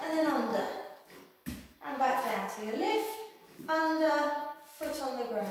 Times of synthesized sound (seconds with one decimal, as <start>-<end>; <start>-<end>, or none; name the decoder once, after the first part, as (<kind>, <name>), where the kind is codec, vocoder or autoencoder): 0.5-3.8 (codec, DAC); 4.4-5.0